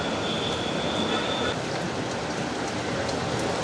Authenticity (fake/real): real